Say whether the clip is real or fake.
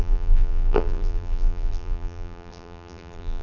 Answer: fake